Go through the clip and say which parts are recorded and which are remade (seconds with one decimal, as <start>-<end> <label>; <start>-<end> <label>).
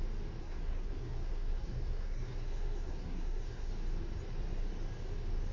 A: 0.0-0.4 recorded; 0.4-3.7 remade; 3.7-5.5 recorded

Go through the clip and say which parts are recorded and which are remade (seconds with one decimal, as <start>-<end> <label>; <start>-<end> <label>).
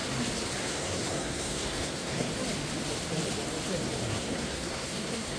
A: 0.0-0.6 recorded; 0.6-2.3 remade; 2.3-4.1 recorded; 4.1-5.4 remade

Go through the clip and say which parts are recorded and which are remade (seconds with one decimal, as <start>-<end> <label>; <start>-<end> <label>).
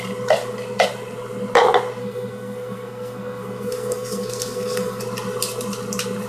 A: 0.0-2.0 recorded; 2.0-5.0 remade; 5.0-6.3 recorded